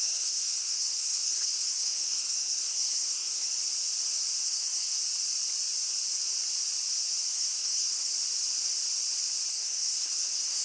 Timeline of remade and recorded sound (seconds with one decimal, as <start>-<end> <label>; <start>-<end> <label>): 0.0-3.5 remade; 3.5-4.4 recorded; 4.4-5.0 remade; 5.0-7.3 recorded; 7.3-8.1 remade; 8.1-9.5 recorded; 9.5-10.6 remade